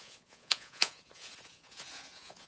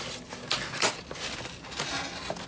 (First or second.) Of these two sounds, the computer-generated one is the first